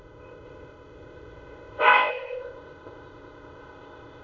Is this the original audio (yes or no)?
no